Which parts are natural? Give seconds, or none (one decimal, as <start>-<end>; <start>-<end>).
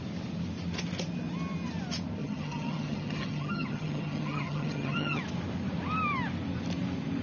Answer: 0.0-2.2; 5.2-7.2